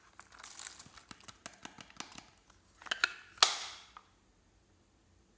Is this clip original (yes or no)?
yes